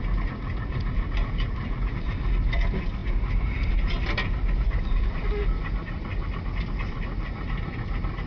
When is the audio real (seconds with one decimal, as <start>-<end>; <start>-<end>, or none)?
0.0-8.3